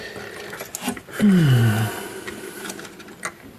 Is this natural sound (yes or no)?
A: yes